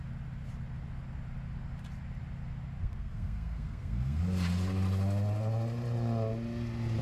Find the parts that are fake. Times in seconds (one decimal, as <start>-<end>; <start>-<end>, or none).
2.8-4.2